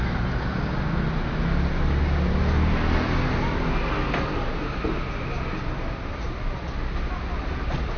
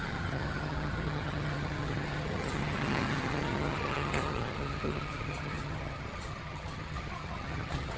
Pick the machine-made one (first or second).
second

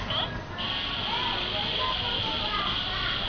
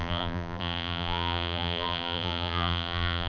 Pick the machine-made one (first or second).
second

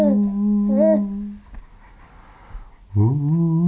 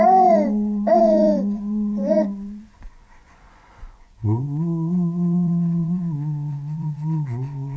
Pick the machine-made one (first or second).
second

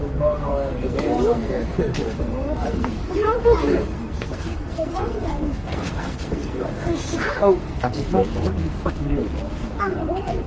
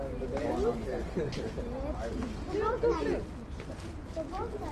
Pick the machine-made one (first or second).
first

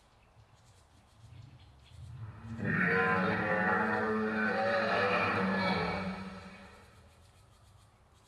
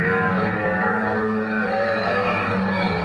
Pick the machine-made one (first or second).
second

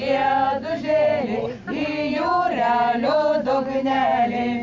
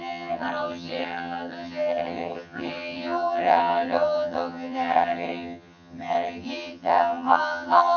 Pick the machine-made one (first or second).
second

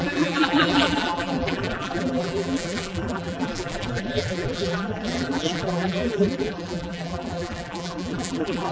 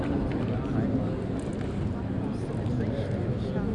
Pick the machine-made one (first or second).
first